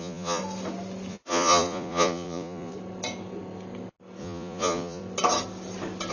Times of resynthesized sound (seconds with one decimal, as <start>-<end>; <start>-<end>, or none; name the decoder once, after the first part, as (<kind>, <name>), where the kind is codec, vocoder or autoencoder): 0.0-0.4 (vocoder, Vocos); 1.1-2.7; 4.2-5.0